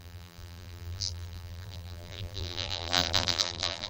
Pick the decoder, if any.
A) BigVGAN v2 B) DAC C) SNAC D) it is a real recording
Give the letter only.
A